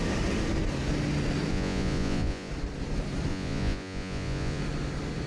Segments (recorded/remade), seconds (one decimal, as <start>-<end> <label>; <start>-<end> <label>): 0.0-1.5 recorded; 1.5-2.5 remade; 2.5-3.3 recorded; 3.3-4.6 remade; 4.6-5.3 recorded